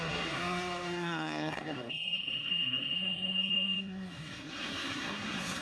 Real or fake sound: fake